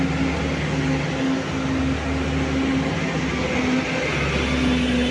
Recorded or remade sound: recorded